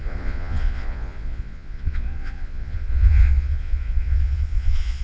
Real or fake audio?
fake